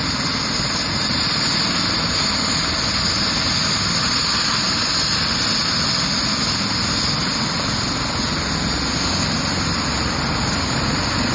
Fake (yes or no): no